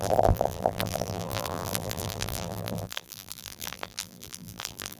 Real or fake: fake